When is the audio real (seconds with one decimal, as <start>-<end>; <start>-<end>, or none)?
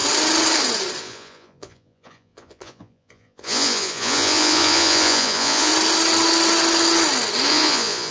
0.0-1.0; 5.7-7.5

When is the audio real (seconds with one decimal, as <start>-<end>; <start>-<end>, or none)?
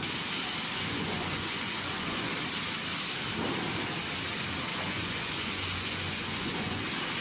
0.0-0.7; 2.3-4.7; 6.8-7.2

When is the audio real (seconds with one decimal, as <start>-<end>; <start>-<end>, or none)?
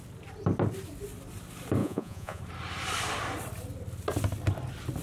0.0-1.8; 2.4-5.0